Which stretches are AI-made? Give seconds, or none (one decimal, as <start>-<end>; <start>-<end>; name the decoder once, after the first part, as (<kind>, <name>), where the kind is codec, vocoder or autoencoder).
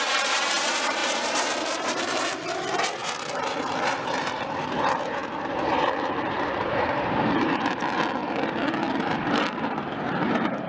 0.0-7.8 (vocoder, BigVGAN v2); 9.0-10.7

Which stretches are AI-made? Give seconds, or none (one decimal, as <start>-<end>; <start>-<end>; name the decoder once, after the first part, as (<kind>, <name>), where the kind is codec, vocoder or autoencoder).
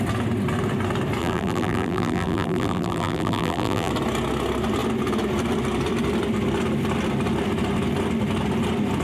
1.2-3.9 (vocoder, BigVGAN v2)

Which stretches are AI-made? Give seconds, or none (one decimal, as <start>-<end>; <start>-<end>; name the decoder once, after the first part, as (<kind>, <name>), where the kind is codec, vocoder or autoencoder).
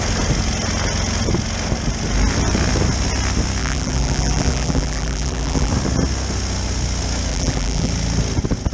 3.6-5.7 (vocoder, BigVGAN v2); 7.3-7.9